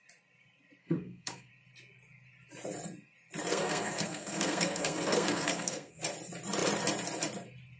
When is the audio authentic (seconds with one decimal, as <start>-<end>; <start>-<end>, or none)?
0.0-0.8; 1.5-3.5; 6.0-7.8